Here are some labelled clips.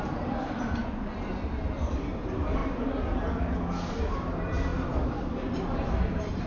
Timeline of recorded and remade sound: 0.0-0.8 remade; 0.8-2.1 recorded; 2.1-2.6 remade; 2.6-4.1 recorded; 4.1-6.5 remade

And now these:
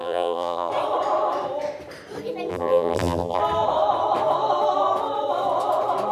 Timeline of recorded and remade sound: 0.0-0.7 remade; 0.7-2.5 recorded; 2.5-3.4 remade; 3.4-6.1 recorded

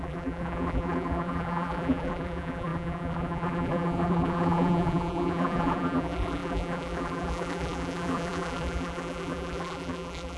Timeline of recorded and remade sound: 0.0-10.4 remade

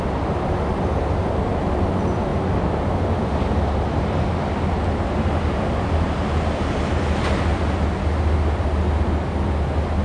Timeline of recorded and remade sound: 0.0-2.3 recorded; 2.3-2.9 remade; 2.9-10.0 recorded

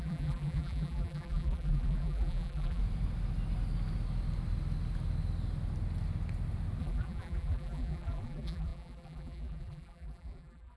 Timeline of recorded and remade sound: 0.0-2.8 remade; 2.8-6.8 recorded; 6.8-10.8 remade

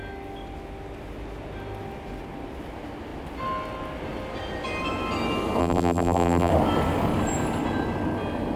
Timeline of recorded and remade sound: 0.0-5.6 recorded; 5.6-6.5 remade; 6.5-8.6 recorded